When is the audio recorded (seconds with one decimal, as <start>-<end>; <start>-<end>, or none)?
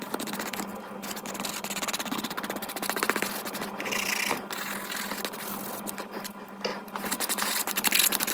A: 0.0-8.3